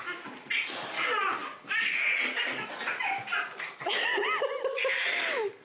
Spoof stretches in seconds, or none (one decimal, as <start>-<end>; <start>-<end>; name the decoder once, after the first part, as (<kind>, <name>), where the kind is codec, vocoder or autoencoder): none